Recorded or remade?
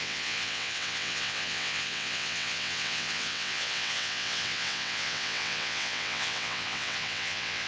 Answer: remade